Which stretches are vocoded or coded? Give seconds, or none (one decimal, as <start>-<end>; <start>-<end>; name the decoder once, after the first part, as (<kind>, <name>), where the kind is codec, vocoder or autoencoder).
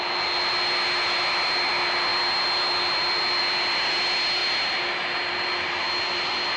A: none